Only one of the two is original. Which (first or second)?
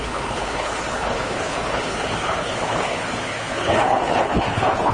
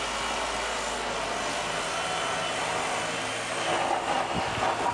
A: second